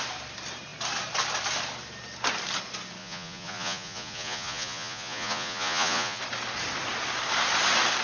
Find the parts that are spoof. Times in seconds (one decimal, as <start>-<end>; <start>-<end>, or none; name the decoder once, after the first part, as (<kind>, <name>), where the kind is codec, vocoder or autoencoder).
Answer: 3.0-6.2 (vocoder, Vocos)